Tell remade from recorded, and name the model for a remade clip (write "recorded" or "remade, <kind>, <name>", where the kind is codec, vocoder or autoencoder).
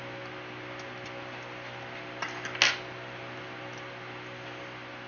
recorded